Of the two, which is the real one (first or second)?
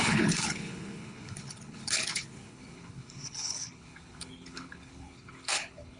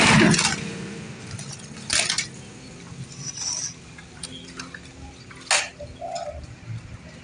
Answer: second